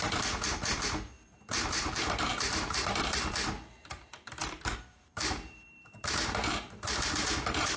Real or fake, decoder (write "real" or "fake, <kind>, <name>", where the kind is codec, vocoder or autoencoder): fake, vocoder, BigVGAN v2